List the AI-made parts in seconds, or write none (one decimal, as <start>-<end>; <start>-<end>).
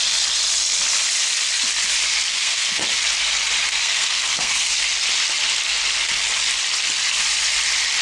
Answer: 2.3-2.8; 3.7-4.7